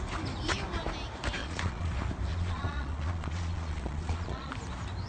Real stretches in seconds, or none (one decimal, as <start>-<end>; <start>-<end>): 0.0-1.4; 1.9-2.3; 4.5-5.1